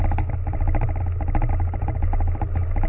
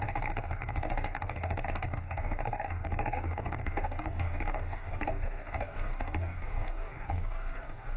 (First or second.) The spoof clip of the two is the second